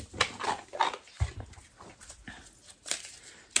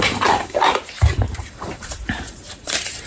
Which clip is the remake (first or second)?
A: second